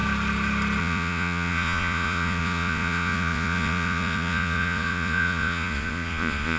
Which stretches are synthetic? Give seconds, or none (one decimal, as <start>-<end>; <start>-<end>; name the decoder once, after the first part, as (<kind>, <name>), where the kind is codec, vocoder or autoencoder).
0.8-6.6 (vocoder, Vocos)